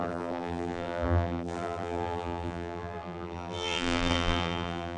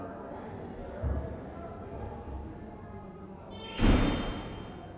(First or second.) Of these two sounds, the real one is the second